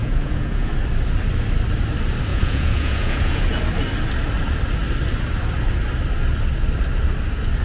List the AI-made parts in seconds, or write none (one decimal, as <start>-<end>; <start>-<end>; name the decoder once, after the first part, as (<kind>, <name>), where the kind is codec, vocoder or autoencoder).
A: 0.0-0.7 (vocoder, Vocos); 2.3-3.6